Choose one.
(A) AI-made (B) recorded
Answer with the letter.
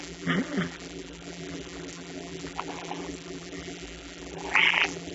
A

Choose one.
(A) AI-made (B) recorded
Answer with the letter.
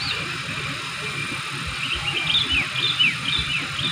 B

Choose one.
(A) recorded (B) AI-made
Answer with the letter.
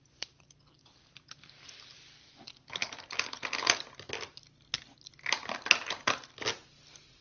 A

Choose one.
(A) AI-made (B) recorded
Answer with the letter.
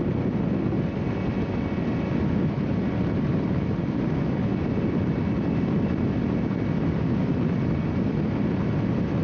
B